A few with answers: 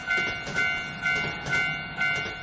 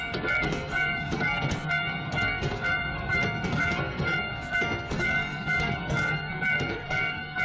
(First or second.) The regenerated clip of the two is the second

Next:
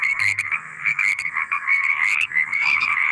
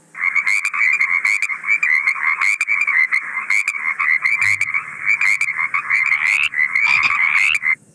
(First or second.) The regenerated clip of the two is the first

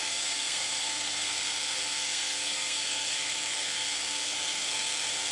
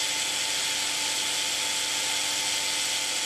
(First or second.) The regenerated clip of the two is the first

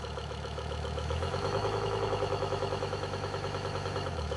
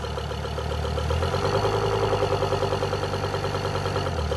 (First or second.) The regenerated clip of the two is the first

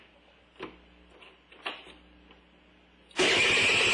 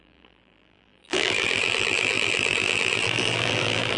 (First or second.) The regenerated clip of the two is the second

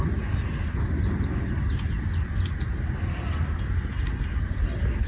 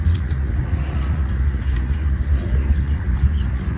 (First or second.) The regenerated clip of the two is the second